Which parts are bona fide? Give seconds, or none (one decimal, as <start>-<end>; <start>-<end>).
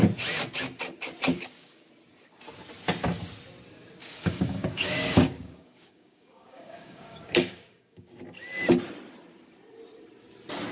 0.0-1.3; 1.9-4.0; 8.2-10.7